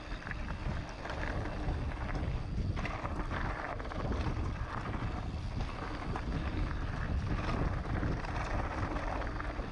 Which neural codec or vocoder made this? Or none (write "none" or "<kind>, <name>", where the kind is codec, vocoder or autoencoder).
none